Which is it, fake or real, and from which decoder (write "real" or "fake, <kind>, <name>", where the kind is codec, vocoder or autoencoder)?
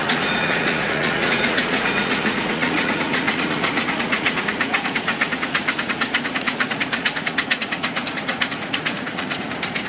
fake, vocoder, Vocos